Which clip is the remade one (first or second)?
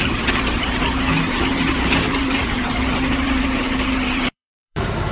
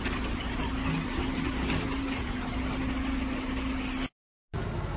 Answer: first